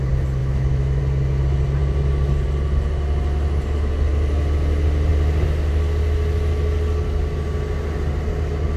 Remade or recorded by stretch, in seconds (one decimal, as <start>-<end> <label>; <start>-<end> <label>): 0.0-0.4 recorded; 0.4-1.0 remade; 1.0-8.8 recorded